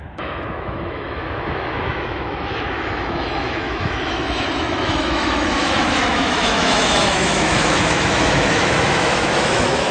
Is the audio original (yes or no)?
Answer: no